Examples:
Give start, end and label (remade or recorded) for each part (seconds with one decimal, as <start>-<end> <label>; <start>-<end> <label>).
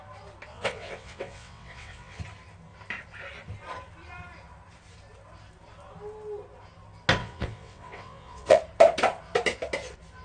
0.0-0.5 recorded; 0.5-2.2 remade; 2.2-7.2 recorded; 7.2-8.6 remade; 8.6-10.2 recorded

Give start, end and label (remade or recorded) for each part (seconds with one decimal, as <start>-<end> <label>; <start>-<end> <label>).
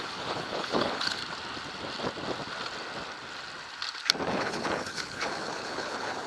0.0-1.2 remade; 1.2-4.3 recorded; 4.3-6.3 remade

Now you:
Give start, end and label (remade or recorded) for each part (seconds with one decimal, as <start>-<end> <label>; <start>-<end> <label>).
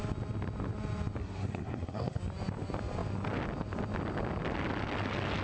0.0-1.2 recorded; 1.2-2.2 remade; 2.2-5.4 recorded